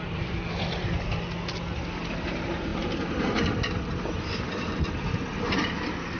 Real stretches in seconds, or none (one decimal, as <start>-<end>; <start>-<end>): 0.0-6.2